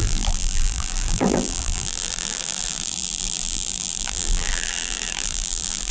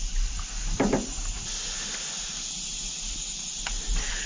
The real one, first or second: second